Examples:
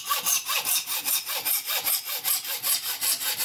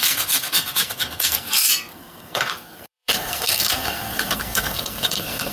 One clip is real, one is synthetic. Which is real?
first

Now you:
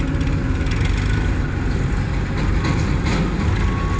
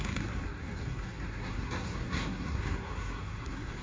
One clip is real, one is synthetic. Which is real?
first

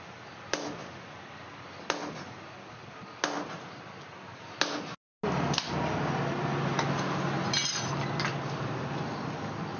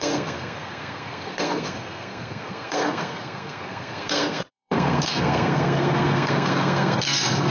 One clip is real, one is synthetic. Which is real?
first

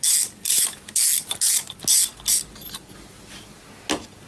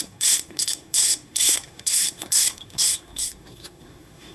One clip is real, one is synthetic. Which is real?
first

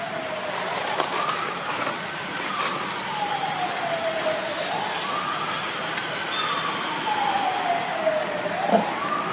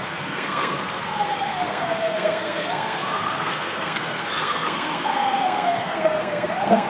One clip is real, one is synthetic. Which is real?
first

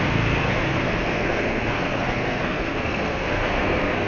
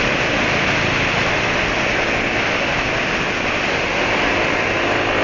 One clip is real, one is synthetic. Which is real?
second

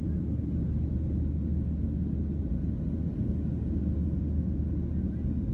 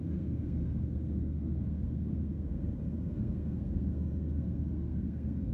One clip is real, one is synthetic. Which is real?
first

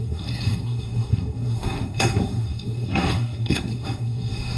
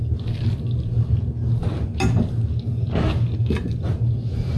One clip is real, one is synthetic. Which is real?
second